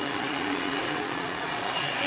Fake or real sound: fake